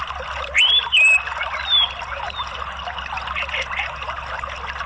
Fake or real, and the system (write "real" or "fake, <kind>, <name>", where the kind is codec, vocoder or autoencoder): real